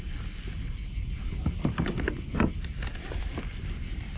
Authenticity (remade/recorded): recorded